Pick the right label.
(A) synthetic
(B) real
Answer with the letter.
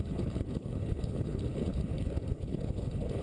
A